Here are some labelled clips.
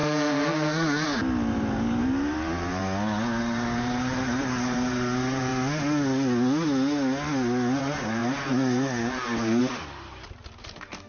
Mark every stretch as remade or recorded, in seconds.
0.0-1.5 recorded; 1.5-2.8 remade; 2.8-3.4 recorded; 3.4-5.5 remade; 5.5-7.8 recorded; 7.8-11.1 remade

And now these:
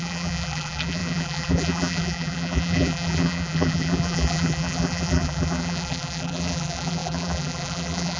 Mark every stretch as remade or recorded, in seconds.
0.0-8.2 remade

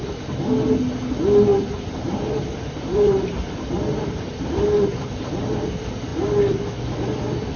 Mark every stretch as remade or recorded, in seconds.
0.0-1.5 recorded; 1.5-5.1 remade; 5.1-7.6 recorded